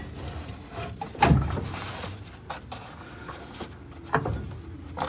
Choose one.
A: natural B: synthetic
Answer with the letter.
A